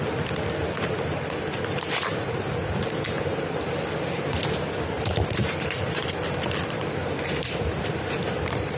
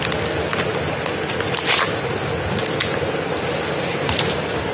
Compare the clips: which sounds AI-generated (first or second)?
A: first